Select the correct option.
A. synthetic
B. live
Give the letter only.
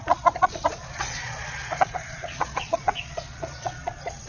A